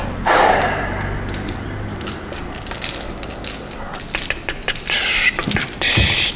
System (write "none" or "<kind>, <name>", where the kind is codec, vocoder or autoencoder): none